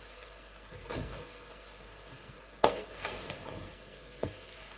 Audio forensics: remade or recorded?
remade